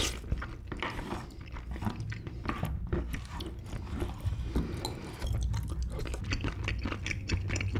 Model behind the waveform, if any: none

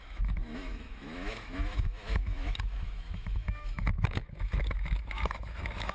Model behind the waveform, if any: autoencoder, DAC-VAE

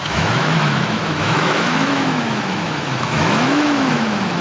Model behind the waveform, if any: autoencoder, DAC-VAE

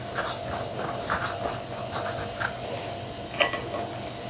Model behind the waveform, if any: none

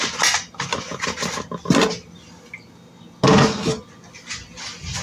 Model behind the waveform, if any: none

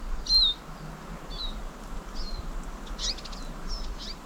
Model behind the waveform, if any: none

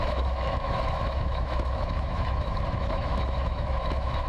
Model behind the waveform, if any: autoencoder, DAC-VAE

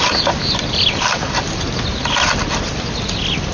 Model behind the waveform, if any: none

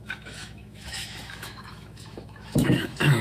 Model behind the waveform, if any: autoencoder, DAC-VAE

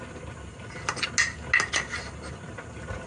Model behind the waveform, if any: none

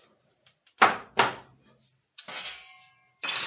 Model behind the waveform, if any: none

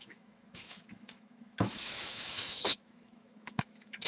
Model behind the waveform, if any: autoencoder, DAC-VAE